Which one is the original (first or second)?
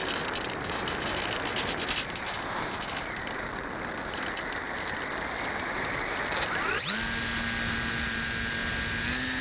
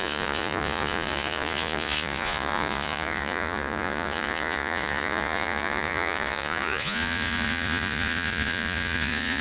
first